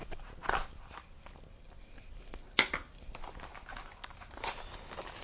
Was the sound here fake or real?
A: real